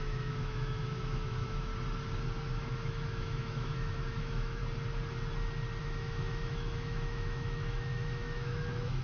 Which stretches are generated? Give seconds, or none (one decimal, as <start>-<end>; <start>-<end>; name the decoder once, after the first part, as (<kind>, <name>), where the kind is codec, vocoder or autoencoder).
0.0-1.7 (autoencoder, DAC-VAE); 2.5-4.6; 5.8-9.0